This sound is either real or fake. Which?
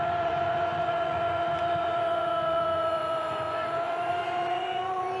fake